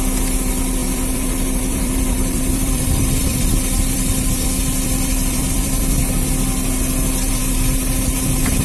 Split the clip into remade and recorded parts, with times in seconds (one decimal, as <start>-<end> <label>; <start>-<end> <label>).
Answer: 0.0-0.8 recorded; 0.8-6.0 remade; 6.0-8.6 recorded